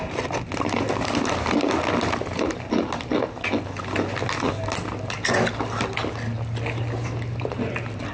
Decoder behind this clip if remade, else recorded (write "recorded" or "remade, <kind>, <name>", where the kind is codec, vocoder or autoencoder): recorded